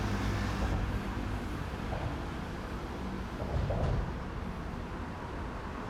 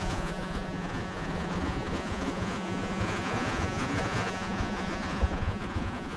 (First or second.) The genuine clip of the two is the first